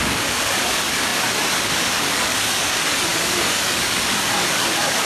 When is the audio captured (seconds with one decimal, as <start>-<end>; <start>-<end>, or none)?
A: none